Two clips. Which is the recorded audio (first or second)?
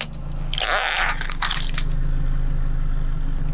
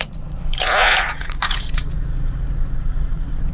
first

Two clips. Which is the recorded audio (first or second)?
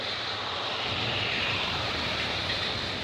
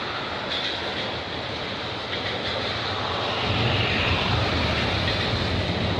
second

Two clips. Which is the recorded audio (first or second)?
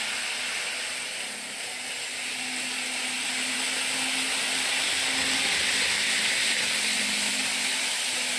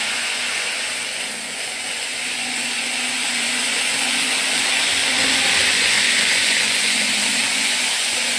first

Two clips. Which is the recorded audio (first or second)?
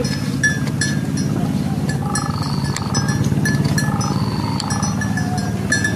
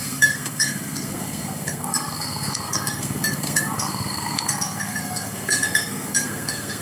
first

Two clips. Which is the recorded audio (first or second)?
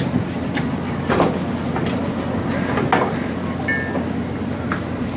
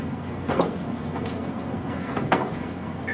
first